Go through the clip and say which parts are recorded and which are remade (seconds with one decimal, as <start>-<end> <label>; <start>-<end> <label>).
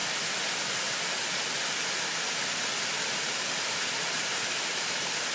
0.0-5.3 recorded